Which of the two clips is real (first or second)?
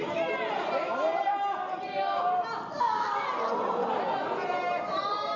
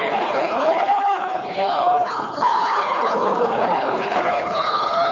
first